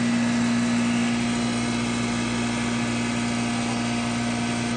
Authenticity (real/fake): real